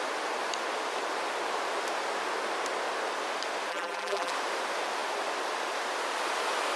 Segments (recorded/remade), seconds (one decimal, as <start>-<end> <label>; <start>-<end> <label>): 0.0-3.7 recorded; 3.7-4.3 remade; 4.3-6.8 recorded